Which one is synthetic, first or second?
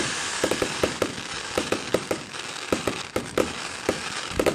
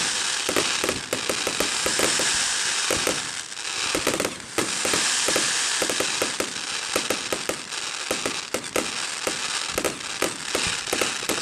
first